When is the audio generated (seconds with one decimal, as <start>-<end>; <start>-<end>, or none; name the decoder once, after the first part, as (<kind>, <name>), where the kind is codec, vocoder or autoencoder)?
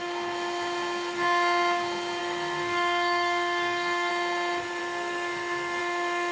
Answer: 2.2-4.1 (codec, SNAC); 4.8-5.8